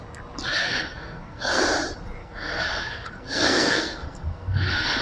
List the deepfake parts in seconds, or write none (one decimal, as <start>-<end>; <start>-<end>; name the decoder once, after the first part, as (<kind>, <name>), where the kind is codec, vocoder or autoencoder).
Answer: 0.6-1.6 (codec, SNAC); 2.2-5.0